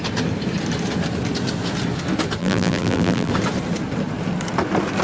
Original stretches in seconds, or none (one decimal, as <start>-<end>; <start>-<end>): 0.0-2.4; 3.3-5.0